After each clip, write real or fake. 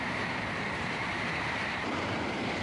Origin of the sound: fake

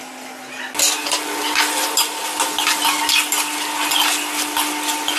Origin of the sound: real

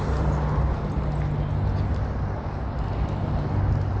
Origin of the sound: real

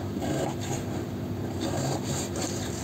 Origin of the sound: fake